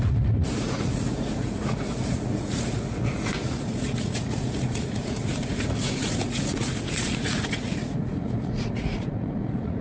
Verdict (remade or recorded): remade